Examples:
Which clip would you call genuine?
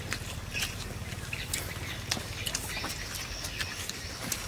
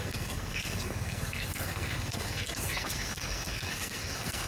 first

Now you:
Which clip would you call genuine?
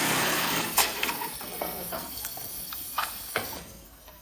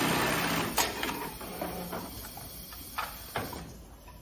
second